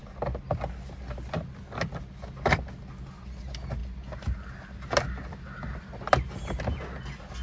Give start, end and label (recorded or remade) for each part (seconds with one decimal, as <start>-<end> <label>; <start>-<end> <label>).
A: 0.0-7.4 recorded